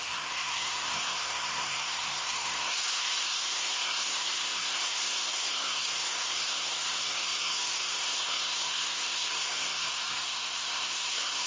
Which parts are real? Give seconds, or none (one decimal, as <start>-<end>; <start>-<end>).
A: none